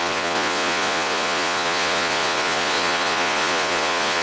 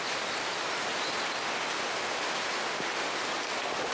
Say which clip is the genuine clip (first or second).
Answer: second